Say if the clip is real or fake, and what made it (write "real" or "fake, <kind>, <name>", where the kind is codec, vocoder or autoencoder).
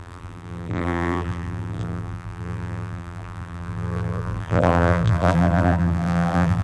fake, vocoder, BigVGAN v2